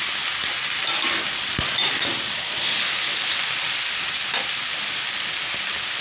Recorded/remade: recorded